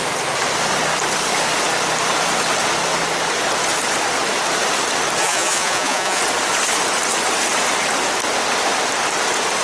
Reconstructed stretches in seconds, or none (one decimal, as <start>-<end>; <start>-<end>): 5.2-6.2